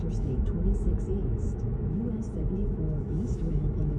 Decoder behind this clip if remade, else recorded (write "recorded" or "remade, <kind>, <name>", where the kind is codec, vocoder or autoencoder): remade, autoencoder, DAC-VAE